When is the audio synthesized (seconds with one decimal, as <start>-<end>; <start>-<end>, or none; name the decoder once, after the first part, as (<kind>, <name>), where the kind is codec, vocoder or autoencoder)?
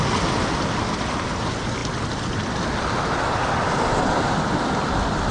none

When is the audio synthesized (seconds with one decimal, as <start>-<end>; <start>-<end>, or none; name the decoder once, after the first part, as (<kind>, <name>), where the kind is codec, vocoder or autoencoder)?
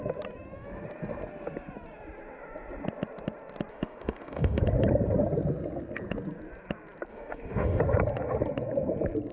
3.7-4.6 (autoencoder, DAC-VAE); 7.1-7.8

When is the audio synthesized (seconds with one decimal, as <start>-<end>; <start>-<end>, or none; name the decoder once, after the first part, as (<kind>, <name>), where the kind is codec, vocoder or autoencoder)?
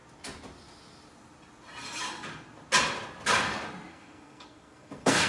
3.9-5.3 (codec, SNAC)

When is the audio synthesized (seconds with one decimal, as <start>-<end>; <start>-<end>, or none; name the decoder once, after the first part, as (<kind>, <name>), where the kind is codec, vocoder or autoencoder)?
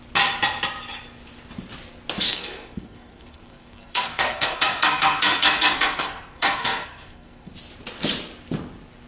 2.3-7.5 (codec, SNAC)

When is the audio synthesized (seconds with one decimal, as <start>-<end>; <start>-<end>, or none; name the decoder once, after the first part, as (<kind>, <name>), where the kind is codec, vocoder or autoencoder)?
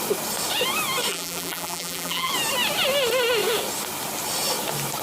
1.1-2.3 (vocoder, BigVGAN v2)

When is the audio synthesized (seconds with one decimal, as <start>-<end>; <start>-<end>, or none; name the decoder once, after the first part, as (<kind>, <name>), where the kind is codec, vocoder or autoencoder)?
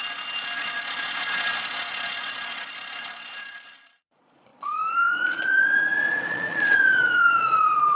0.6-8.0 (vocoder, Vocos)